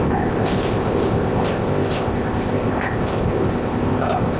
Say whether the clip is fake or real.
fake